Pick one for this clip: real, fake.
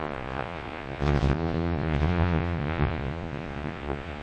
fake